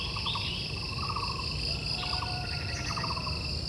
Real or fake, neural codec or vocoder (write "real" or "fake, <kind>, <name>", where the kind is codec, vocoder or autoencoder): real